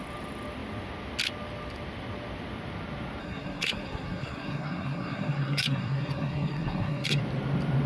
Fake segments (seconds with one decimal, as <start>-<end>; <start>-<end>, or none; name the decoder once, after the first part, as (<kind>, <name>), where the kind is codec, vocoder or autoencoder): 3.2-7.2 (codec, SNAC)